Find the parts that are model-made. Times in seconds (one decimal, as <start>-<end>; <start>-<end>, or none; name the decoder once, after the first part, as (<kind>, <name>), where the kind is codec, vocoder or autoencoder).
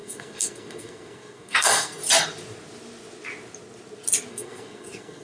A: 0.0-2.0 (codec, SNAC); 4.3-5.2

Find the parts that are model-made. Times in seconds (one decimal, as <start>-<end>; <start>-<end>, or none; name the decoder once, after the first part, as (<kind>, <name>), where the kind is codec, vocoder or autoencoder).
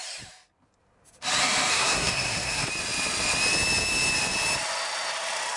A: 1.7-2.7 (codec, SNAC)